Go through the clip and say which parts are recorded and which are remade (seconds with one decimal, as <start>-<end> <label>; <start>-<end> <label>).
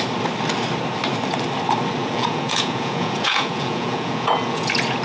0.0-2.0 recorded; 2.0-5.0 remade